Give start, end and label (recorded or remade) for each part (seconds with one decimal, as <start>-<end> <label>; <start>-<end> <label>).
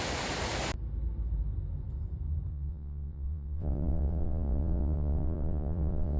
0.0-2.5 recorded; 2.5-6.2 remade